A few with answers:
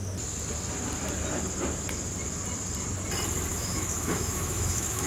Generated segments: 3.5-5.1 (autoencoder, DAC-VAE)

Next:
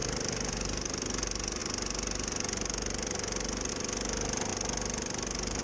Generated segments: 0.0-1.2 (vocoder, BigVGAN v2); 4.5-5.6